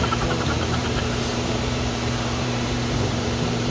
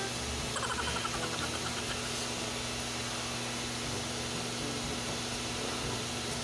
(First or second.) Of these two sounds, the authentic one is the second